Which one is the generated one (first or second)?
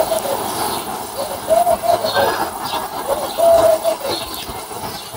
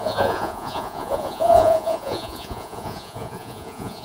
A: second